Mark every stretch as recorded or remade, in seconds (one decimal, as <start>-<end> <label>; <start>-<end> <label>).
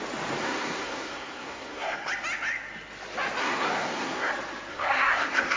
0.0-0.4 recorded; 0.4-2.1 remade; 2.1-3.4 recorded; 3.4-4.3 remade; 4.3-4.7 recorded; 4.7-5.6 remade